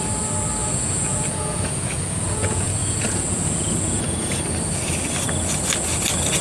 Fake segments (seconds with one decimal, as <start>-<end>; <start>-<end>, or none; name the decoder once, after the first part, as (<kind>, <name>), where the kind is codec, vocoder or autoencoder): 0.6-4.4 (vocoder, Vocos)